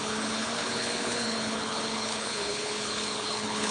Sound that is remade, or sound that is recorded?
remade